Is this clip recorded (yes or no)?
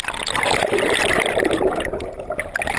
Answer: yes